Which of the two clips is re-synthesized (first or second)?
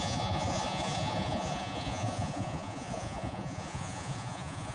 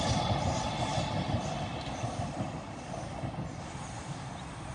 first